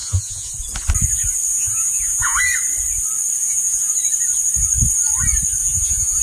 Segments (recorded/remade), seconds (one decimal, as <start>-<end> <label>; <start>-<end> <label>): 0.0-0.5 remade; 0.5-1.5 recorded; 1.5-2.4 remade; 2.4-3.4 recorded; 3.4-3.9 remade; 3.9-5.6 recorded; 5.6-6.2 remade